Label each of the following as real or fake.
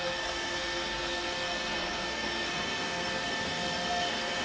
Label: fake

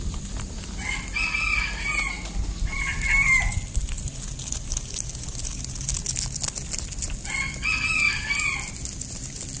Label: real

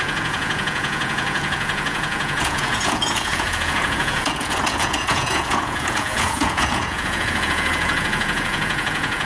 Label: fake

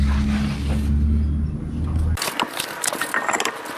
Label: real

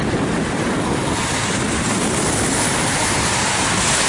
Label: real